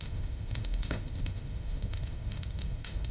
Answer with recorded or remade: remade